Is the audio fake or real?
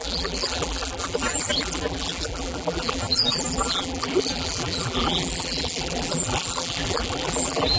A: fake